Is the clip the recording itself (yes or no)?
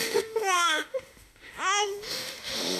no